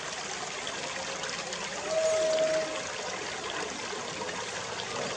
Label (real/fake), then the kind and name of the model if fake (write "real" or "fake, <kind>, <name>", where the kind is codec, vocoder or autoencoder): real